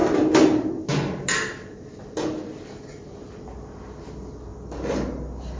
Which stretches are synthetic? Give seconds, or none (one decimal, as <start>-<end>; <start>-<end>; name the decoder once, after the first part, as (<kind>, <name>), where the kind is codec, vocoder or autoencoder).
none